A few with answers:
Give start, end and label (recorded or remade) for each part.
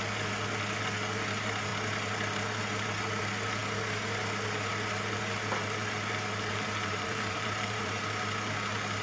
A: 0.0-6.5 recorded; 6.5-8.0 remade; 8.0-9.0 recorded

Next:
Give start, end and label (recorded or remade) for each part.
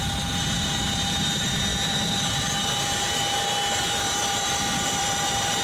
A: 0.0-5.6 remade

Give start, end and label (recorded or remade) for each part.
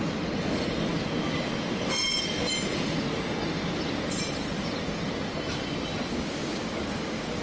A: 0.0-6.1 recorded; 6.1-7.4 remade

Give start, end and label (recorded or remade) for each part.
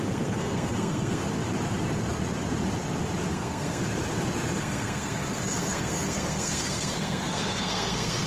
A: 0.0-1.2 remade; 1.2-3.3 recorded; 3.3-3.8 remade; 3.8-4.6 recorded; 4.6-8.3 remade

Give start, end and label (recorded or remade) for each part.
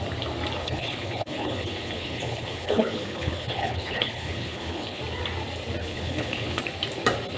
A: 0.0-0.6 recorded; 0.6-5.0 remade; 5.0-5.8 recorded; 5.8-6.6 remade; 6.6-7.4 recorded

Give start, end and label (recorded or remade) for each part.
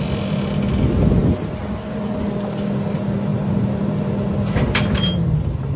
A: 0.0-5.8 recorded